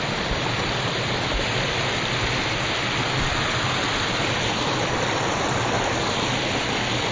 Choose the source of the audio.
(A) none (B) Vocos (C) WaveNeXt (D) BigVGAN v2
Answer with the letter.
A